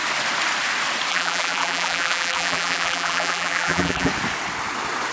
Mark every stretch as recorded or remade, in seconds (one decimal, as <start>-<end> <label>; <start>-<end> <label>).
0.0-1.1 recorded; 1.1-4.1 remade; 4.1-5.1 recorded